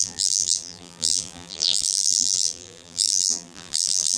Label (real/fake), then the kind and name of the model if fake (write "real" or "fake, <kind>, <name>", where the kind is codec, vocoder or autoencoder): fake, vocoder, BigVGAN v2